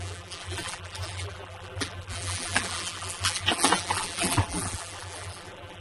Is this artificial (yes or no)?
yes